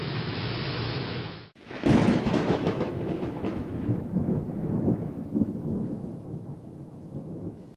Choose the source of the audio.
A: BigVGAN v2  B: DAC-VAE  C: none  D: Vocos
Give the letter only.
B